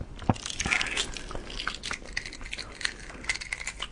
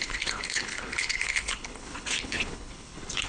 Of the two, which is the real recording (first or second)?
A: first